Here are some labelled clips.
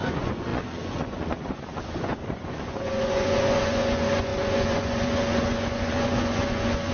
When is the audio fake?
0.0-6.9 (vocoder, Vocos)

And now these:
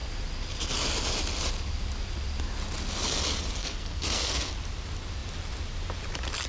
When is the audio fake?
3.6-4.5 (codec, SNAC)

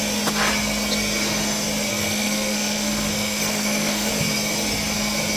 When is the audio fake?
1.9-4.1 (codec, SNAC)